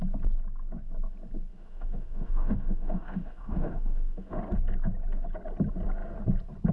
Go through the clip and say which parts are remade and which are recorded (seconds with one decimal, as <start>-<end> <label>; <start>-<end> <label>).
0.0-1.5 recorded; 1.5-4.4 remade; 4.4-6.7 recorded